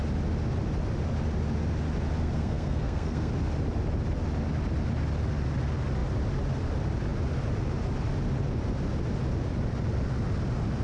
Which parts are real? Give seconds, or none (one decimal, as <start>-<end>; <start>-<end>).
0.0-2.2; 3.3-10.8